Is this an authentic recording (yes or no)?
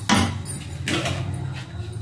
yes